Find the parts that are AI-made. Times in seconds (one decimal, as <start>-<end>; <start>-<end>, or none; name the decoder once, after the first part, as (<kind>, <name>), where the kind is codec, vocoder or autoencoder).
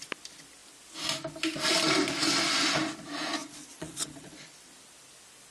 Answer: 3.4-4.5 (vocoder, Vocos)